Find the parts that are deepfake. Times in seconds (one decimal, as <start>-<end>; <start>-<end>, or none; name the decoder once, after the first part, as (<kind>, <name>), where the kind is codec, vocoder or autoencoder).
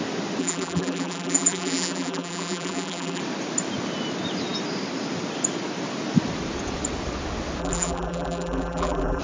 0.4-3.2 (vocoder, BigVGAN v2); 7.6-9.2